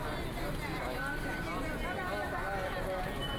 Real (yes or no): yes